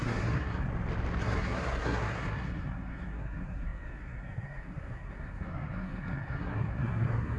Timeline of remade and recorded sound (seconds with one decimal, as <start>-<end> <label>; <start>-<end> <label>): 0.0-0.7 remade; 0.7-1.2 recorded; 1.2-7.4 remade